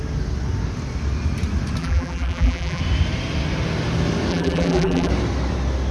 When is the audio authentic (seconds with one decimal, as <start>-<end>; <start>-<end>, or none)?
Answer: 0.0-1.8; 2.8-4.3; 5.1-5.9